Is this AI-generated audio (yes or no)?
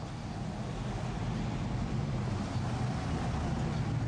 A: no